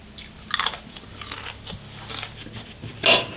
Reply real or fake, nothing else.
real